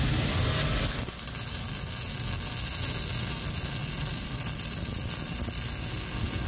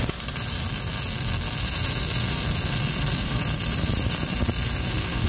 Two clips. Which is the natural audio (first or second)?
first